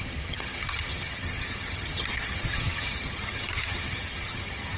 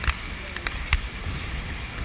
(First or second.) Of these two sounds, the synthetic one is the first